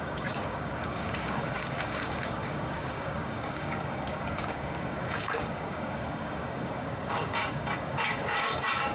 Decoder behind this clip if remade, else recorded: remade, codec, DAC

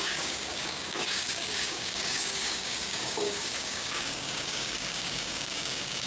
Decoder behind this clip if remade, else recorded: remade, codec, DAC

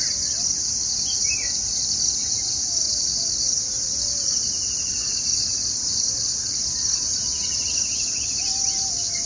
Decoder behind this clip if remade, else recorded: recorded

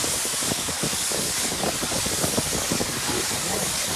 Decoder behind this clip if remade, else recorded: remade, codec, DAC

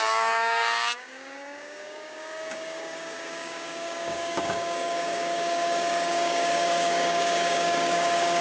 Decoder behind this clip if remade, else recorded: remade, codec, DAC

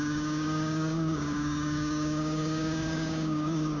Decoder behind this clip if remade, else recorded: remade, codec, DAC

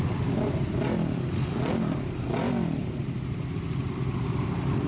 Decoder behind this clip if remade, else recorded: recorded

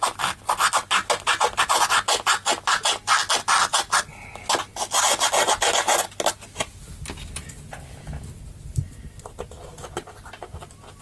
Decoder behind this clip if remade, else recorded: recorded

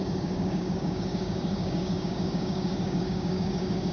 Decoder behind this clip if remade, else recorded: remade, codec, DAC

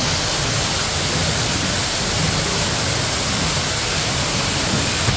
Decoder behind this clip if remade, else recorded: recorded